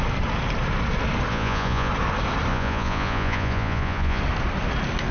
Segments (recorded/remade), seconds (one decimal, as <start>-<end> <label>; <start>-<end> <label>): 0.0-1.3 recorded; 1.3-1.9 remade; 1.9-2.5 recorded; 2.5-4.2 remade; 4.2-5.1 recorded